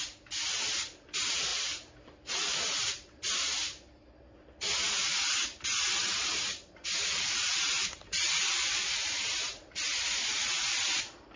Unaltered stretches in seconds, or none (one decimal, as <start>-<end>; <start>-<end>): 0.0-6.0; 10.0-11.4